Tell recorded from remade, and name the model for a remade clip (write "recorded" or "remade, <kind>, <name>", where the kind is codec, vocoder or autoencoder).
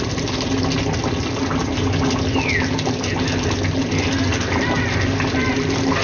recorded